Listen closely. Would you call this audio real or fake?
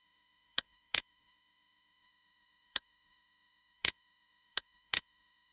fake